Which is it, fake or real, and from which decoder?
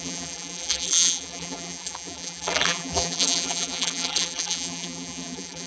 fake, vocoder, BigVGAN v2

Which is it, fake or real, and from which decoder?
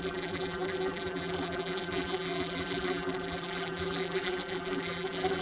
fake, vocoder, BigVGAN v2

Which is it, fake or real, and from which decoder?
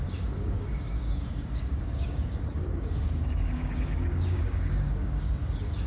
fake, codec, DAC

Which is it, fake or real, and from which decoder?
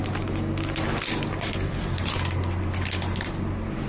real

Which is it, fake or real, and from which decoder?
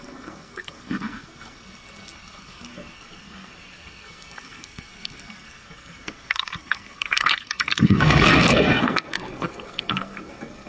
fake, codec, SNAC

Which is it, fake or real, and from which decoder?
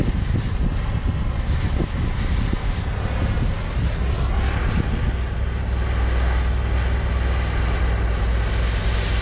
real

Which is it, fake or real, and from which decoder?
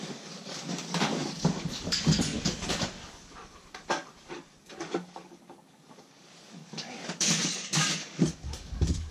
fake, codec, DAC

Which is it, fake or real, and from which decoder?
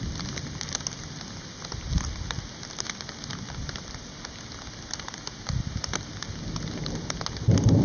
real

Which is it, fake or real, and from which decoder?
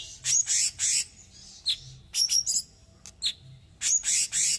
real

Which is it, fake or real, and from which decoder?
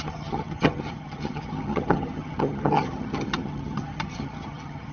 fake, vocoder, HiFi-GAN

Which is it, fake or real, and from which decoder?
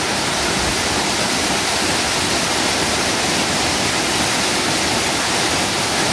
real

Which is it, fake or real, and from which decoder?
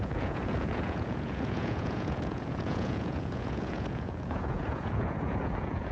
fake, vocoder, Vocos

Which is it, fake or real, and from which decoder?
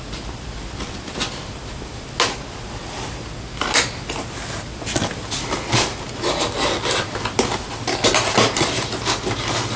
real